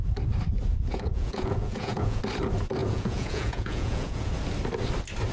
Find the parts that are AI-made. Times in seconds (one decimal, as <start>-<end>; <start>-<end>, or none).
0.7-2.2; 2.8-4.3